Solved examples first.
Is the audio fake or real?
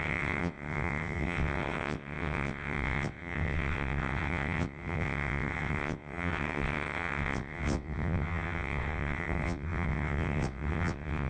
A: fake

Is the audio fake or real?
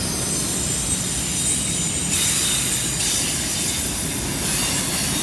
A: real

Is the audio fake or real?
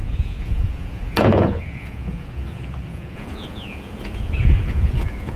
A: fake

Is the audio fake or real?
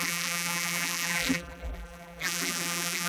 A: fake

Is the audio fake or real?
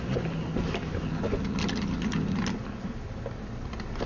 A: real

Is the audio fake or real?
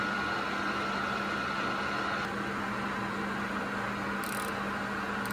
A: real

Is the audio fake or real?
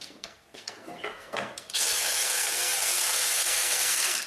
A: fake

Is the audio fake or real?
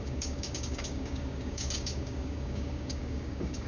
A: fake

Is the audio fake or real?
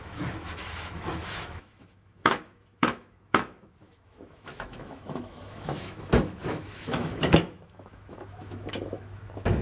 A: fake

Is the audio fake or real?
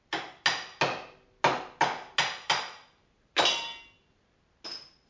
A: real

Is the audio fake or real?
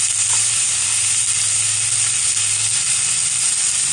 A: real